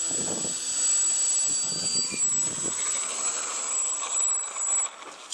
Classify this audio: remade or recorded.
recorded